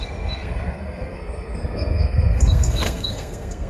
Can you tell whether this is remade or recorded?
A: remade